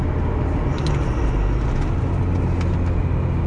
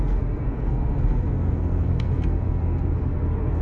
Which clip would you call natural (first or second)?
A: first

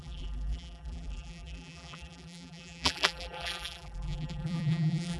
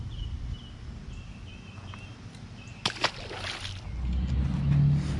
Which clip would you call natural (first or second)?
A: second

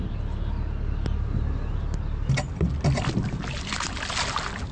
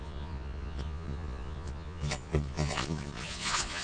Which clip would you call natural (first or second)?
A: first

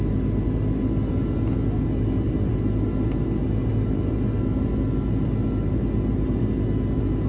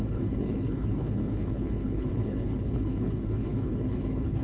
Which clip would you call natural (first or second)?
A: first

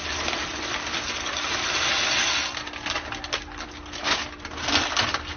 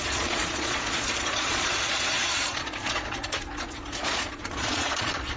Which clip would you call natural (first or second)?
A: first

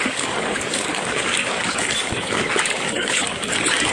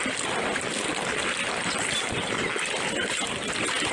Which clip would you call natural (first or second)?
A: second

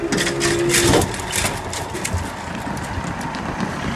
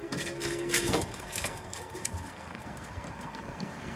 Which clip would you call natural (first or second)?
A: first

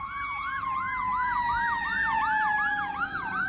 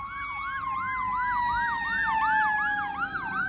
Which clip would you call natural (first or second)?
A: second